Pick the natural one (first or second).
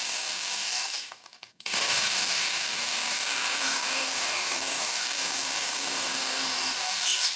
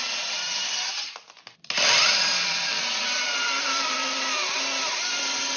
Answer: second